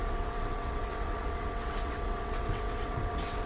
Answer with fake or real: fake